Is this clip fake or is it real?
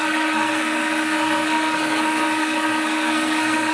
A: fake